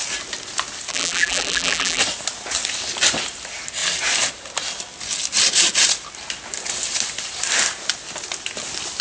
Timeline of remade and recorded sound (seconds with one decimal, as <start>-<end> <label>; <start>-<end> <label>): 0.0-0.9 recorded; 0.9-2.0 remade; 2.0-9.0 recorded

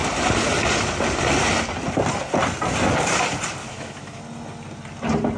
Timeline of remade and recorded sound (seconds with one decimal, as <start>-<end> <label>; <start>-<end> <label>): 0.0-3.6 recorded; 3.6-4.2 remade; 4.2-5.4 recorded